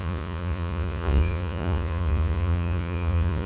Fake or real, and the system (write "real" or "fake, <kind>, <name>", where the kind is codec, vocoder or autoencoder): fake, vocoder, Vocos